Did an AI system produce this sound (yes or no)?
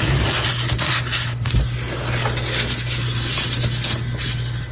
no